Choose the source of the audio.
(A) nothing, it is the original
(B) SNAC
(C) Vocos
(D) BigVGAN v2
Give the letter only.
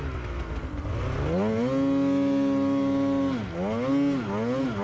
A